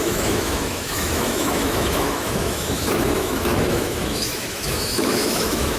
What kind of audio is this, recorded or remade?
remade